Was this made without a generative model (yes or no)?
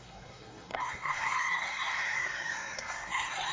no